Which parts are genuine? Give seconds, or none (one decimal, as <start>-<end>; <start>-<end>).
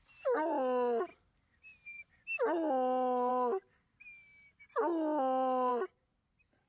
0.0-6.7